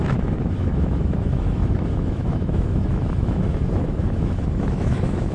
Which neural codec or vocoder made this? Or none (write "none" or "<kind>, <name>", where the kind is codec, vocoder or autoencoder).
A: autoencoder, DAC-VAE